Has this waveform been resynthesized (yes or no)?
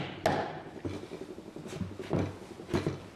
no